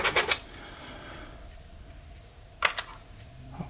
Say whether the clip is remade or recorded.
recorded